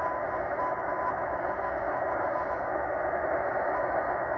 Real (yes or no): no